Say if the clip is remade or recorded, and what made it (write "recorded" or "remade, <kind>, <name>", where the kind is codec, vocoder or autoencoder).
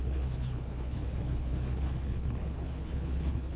remade, codec, HILCodec